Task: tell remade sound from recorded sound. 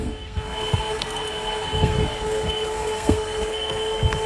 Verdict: remade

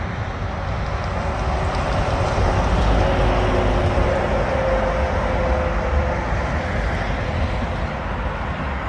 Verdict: recorded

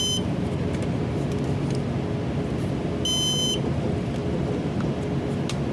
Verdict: recorded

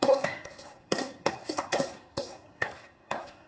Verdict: remade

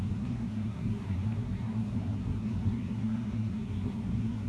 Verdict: remade